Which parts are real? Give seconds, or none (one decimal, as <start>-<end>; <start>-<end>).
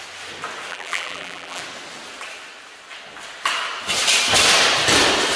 0.0-0.7; 1.6-5.4